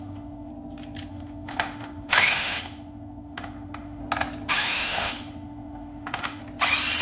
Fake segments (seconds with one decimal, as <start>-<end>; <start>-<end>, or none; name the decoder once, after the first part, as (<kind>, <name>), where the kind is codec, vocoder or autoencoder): 0.0-0.5 (autoencoder, DAC-VAE); 1.1-4.0; 4.5-6.4